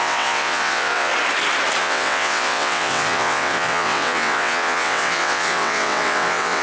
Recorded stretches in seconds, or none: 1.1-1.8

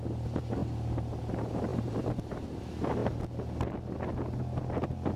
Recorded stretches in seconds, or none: 0.0-1.7; 2.6-5.2

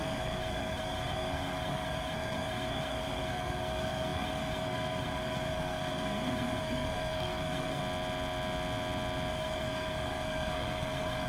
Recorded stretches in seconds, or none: 7.8-9.3

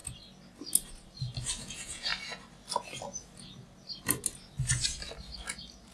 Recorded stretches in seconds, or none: 0.0-1.6; 2.1-5.9

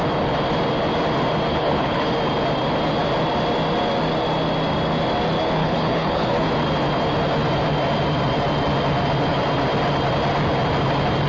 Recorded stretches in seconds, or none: 0.0-1.5; 2.1-5.6; 6.5-11.3

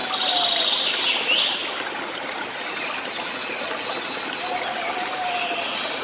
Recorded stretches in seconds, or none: 0.0-6.0

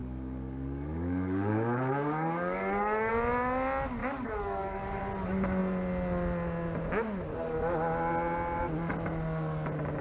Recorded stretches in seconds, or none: 3.1-4.0; 5.0-10.0